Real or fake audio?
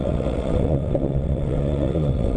fake